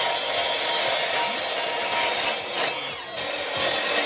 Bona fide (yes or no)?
yes